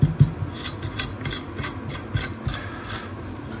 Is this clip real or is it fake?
real